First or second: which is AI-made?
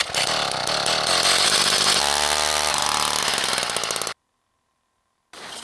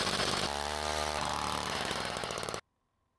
second